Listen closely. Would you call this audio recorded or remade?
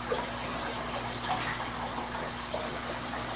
recorded